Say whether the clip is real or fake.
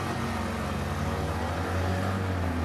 real